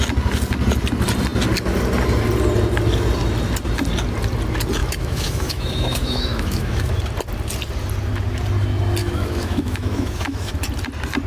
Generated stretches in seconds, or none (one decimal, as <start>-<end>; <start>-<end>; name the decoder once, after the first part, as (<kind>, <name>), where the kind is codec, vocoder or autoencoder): 4.8-7.0 (autoencoder, DAC-VAE); 9.0-10.5